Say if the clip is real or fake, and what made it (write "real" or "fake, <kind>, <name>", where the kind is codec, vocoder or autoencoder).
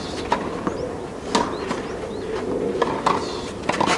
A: real